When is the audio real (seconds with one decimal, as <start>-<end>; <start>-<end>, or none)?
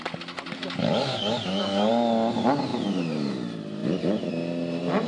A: 0.0-0.8; 1.9-5.1